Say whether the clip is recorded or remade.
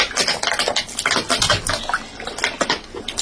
recorded